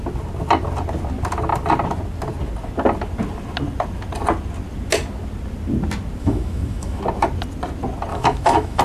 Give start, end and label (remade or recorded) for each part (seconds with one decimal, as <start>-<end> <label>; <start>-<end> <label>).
0.0-6.2 recorded; 6.2-7.0 remade; 7.0-8.1 recorded; 8.1-8.8 remade

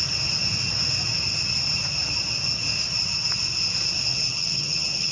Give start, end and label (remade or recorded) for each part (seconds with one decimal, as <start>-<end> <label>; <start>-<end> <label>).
0.0-4.1 recorded; 4.1-5.1 remade

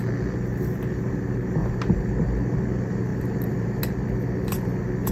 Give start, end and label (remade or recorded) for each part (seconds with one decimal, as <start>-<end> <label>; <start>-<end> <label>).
0.0-1.6 recorded; 1.6-2.1 remade; 2.1-3.1 recorded; 3.1-3.8 remade; 3.8-5.1 recorded

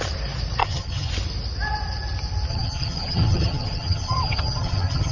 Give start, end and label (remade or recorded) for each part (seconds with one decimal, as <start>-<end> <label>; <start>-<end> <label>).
0.0-0.6 recorded; 0.6-1.1 remade; 1.1-2.5 recorded; 2.5-5.1 remade

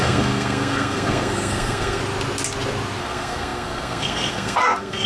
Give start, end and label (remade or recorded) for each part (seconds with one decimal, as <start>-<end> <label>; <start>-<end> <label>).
0.0-2.0 remade; 2.0-3.0 recorded; 3.0-5.1 remade

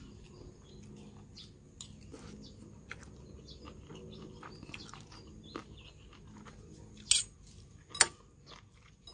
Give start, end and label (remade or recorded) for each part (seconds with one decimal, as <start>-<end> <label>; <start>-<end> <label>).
0.0-9.1 recorded